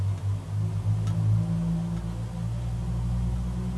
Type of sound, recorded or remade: recorded